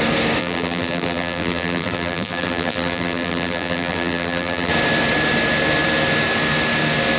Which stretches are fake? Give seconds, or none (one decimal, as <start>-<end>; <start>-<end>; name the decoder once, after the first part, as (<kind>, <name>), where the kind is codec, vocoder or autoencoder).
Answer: 0.4-4.7 (vocoder, BigVGAN v2)